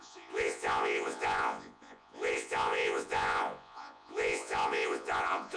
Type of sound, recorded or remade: remade